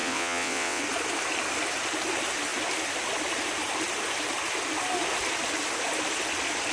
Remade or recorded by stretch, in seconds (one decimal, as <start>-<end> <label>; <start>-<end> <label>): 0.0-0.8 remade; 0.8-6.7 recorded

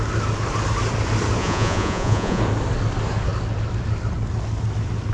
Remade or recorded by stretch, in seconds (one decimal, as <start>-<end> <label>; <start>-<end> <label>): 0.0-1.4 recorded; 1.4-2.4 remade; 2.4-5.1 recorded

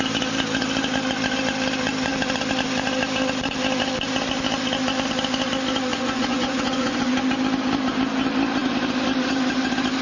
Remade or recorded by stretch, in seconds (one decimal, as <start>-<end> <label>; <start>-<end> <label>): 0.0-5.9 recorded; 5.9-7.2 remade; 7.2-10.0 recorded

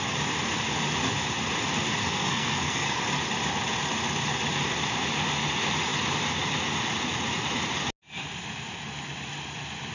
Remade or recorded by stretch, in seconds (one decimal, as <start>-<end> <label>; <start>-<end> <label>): 0.0-2.0 recorded; 2.0-3.0 remade; 3.0-9.9 recorded

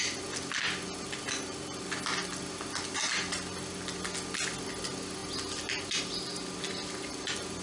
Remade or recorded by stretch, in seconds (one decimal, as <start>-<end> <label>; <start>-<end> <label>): 0.0-7.6 recorded

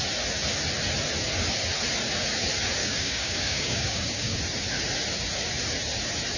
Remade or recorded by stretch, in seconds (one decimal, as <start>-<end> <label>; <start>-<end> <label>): 0.0-2.8 recorded; 2.8-4.4 remade; 4.4-6.4 recorded

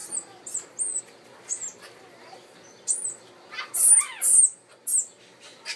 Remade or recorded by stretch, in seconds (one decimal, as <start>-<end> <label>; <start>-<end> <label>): 0.0-5.8 recorded